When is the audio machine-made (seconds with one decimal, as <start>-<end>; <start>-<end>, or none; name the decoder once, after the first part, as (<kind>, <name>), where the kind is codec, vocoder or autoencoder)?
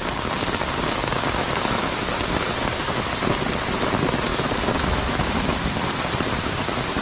1.4-2.1 (autoencoder, DAC-VAE); 4.3-5.5